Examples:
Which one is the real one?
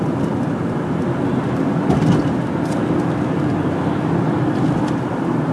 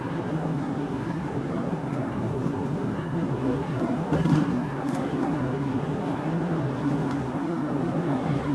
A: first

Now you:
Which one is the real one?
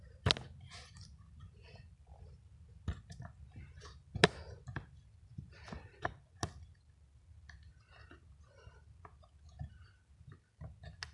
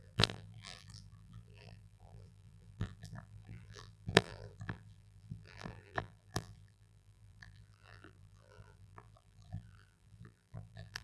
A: first